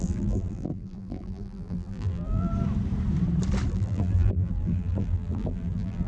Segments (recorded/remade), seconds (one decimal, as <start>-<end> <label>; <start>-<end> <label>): 0.0-2.5 remade; 2.5-3.7 recorded; 3.7-6.1 remade